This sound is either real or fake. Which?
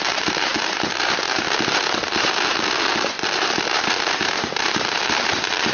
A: fake